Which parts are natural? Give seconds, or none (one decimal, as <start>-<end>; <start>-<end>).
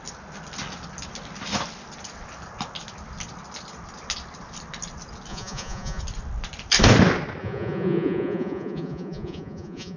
0.0-5.3; 6.0-7.4